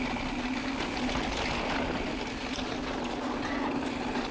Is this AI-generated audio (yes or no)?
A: no